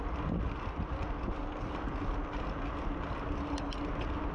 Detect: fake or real real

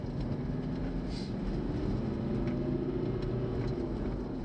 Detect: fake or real real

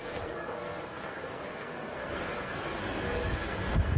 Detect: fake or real fake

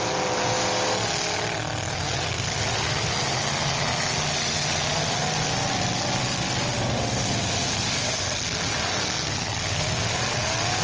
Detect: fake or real real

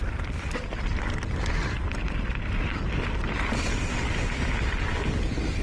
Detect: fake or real fake